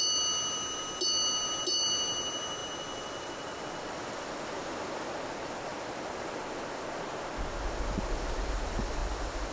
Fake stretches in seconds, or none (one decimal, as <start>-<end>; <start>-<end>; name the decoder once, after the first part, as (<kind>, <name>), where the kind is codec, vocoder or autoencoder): none